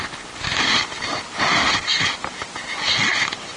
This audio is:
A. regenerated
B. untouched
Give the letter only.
B